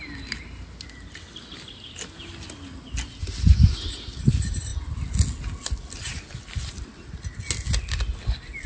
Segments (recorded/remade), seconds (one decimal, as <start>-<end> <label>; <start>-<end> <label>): 0.0-8.7 recorded